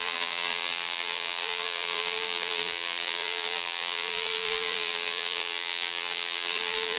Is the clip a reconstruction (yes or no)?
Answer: yes